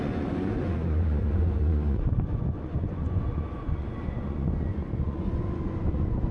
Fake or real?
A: fake